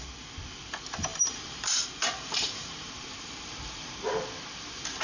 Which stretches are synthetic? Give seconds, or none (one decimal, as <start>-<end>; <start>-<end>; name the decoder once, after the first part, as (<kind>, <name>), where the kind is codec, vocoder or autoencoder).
1.1-3.9 (vocoder, BigVGAN v2)